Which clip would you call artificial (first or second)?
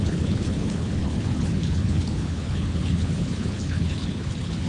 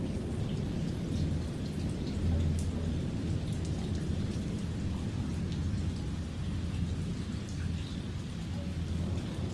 first